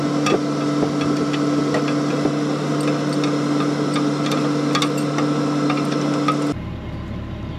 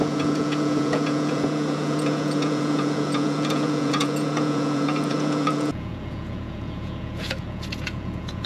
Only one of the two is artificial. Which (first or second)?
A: second